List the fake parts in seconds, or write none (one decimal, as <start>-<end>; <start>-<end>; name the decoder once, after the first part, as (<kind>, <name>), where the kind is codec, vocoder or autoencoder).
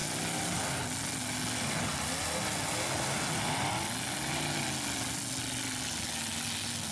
none